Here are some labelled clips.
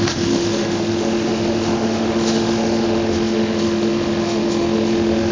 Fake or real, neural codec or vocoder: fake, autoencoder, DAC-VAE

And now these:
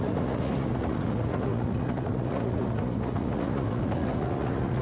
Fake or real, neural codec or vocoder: fake, vocoder, Vocos